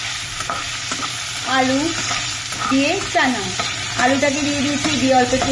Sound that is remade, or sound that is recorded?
recorded